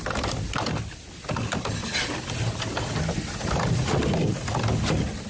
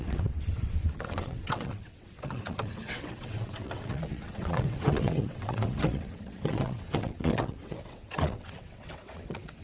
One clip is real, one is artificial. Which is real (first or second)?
first